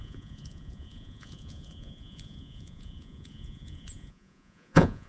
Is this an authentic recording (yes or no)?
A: no